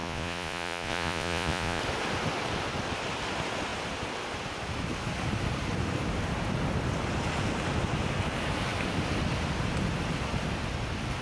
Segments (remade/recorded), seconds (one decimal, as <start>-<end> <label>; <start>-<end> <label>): 0.0-1.8 remade; 1.8-11.2 recorded